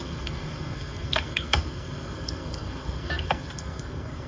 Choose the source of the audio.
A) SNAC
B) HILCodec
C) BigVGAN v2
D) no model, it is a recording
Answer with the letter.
A